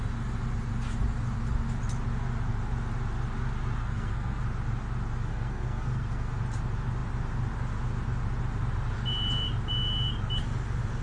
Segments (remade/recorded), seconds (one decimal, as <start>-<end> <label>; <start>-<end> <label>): 0.0-3.8 recorded; 3.8-4.4 remade; 4.4-5.3 recorded; 5.3-6.3 remade; 6.3-11.0 recorded